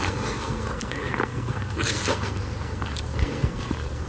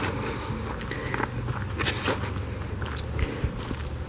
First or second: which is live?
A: second